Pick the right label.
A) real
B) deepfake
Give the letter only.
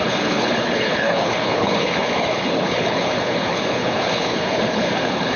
B